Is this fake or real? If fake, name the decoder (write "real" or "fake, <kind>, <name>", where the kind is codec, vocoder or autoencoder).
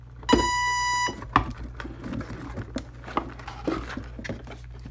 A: real